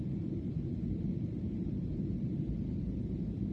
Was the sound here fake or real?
fake